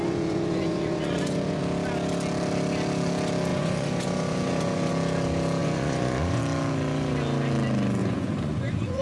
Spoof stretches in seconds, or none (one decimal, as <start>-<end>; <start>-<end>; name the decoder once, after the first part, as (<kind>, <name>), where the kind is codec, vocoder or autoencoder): 0.0-1.6 (vocoder, Vocos); 3.5-4.9; 5.6-6.4; 8.0-9.0